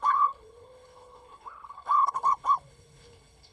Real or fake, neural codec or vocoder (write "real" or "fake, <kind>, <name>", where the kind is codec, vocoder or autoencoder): fake, codec, HILCodec